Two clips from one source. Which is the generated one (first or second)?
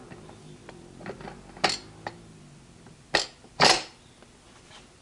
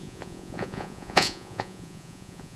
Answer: second